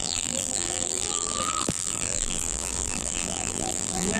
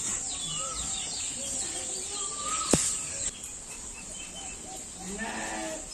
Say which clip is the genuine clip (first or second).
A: second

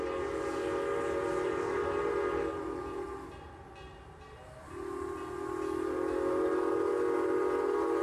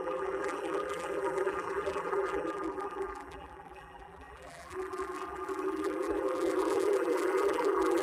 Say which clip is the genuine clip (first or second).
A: first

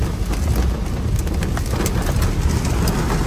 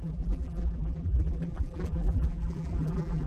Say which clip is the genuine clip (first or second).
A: first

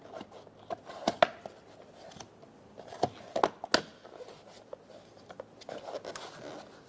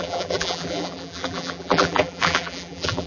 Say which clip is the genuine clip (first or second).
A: first